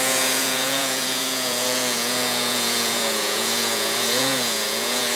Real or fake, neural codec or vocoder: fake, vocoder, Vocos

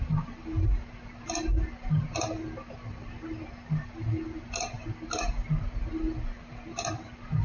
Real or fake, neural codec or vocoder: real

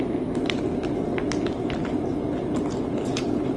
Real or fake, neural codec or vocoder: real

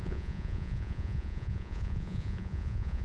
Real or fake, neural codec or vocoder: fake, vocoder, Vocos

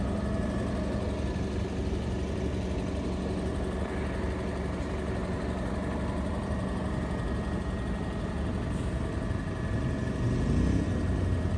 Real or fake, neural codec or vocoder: real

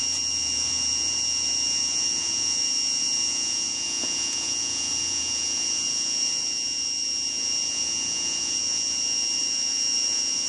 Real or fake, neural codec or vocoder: fake, vocoder, Vocos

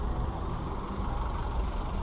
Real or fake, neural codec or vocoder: real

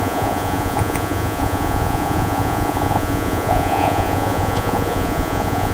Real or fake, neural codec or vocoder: fake, vocoder, Vocos